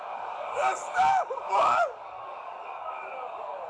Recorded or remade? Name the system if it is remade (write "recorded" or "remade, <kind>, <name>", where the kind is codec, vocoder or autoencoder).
remade, codec, DAC